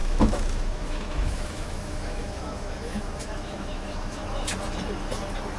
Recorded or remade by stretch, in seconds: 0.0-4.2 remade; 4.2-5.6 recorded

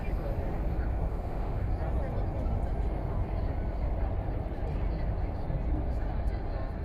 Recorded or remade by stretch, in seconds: 0.0-1.1 recorded; 1.1-1.7 remade; 1.7-6.8 recorded

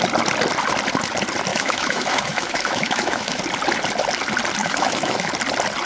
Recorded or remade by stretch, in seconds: 0.0-1.5 recorded; 1.5-3.4 remade; 3.4-4.6 recorded; 4.6-5.3 remade; 5.3-5.9 recorded

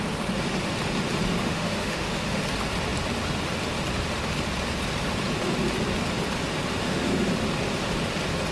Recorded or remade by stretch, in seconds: 0.0-1.4 recorded; 1.4-2.4 remade; 2.4-6.7 recorded; 6.7-7.3 remade; 7.3-8.5 recorded

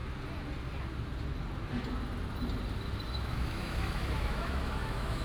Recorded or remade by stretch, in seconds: 0.0-3.1 recorded; 3.1-5.2 remade

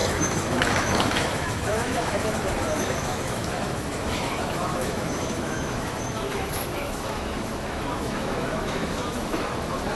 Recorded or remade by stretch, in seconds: 0.0-10.0 remade